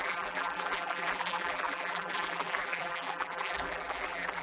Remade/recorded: remade